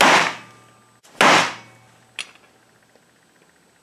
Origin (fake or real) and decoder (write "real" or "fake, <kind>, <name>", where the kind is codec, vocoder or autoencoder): real